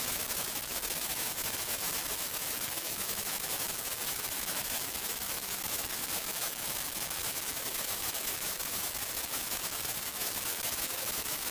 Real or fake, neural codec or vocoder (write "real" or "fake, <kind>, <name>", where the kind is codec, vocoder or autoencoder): fake, autoencoder, DAC-VAE